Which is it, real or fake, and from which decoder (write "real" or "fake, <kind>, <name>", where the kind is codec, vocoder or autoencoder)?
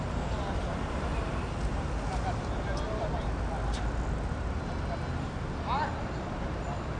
real